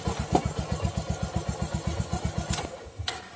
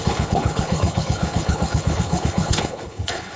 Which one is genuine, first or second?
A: first